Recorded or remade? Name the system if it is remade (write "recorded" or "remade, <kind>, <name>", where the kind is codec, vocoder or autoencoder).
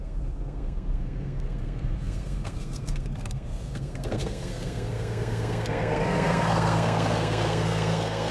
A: remade, codec, SNAC